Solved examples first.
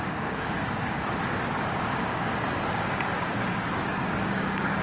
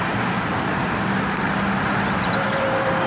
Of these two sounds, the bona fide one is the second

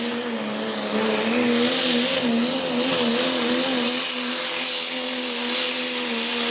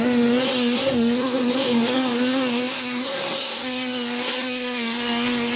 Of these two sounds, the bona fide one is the first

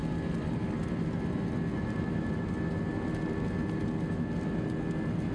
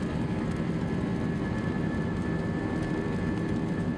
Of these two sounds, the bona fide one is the first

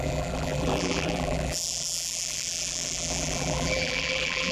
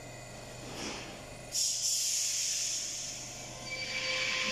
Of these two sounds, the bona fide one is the second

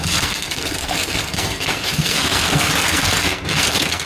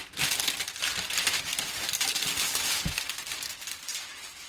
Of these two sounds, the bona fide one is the second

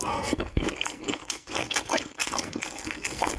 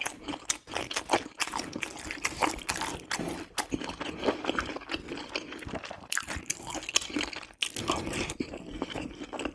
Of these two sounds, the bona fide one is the second